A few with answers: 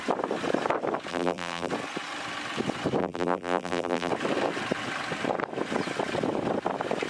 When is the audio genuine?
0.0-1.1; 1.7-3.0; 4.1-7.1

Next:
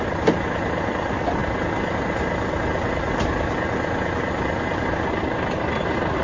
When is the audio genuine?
1.4-5.1